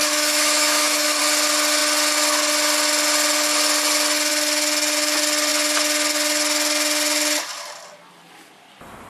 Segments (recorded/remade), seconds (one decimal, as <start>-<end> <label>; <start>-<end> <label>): 0.0-1.2 remade; 1.2-9.1 recorded